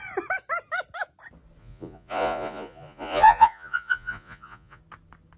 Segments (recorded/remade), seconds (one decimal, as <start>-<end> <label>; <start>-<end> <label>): 0.0-1.6 recorded; 1.6-4.8 remade; 4.8-5.4 recorded